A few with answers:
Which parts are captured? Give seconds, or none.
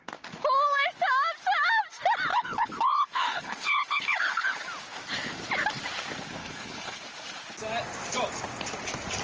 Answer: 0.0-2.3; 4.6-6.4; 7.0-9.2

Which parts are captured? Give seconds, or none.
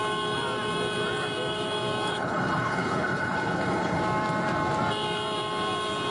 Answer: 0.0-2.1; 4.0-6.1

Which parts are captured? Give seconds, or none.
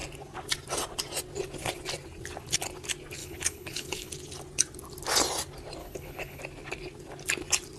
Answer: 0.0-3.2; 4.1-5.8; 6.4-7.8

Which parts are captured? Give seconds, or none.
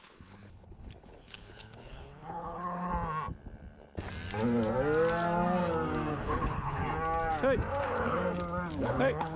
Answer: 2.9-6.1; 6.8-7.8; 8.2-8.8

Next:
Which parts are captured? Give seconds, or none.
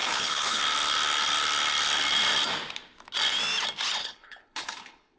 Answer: 0.6-4.0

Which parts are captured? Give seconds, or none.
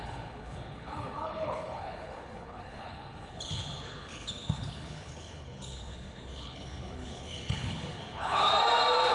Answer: 8.5-9.1